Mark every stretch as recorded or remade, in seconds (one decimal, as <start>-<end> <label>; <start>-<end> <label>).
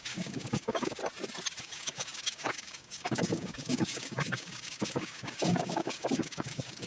0.0-1.0 remade; 1.0-1.6 recorded; 1.6-6.9 remade